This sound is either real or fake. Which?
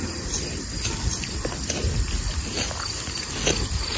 real